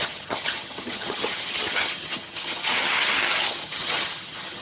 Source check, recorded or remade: remade